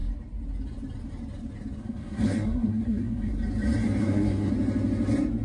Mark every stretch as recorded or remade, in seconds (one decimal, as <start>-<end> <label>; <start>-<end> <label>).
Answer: 0.0-1.8 recorded; 1.8-3.3 remade; 3.3-4.0 recorded; 4.0-4.5 remade; 4.5-5.4 recorded